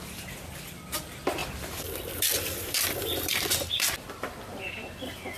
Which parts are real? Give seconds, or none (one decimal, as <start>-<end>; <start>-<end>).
0.0-1.4; 4.6-5.4

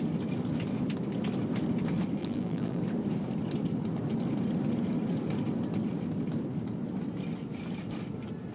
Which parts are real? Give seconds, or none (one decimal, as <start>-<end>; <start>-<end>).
0.0-2.2; 2.8-8.5

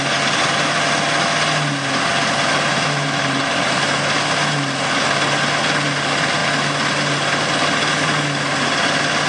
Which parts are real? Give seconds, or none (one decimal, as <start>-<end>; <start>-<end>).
0.0-2.1; 3.7-9.3

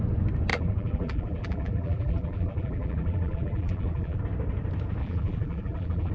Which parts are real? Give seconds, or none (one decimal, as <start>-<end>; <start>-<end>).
0.0-0.5; 4.2-5.0

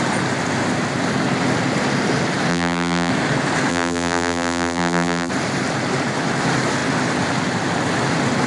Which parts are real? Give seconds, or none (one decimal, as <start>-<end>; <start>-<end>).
0.0-2.5; 3.1-3.7; 5.3-8.5

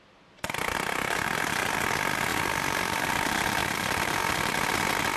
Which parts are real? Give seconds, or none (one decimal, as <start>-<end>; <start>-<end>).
0.0-2.3; 3.1-3.6; 4.4-5.2